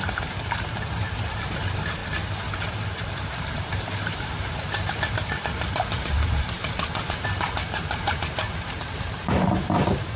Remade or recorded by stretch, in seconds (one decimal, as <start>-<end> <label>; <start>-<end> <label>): 0.0-2.0 remade; 2.0-2.7 recorded; 2.7-10.2 remade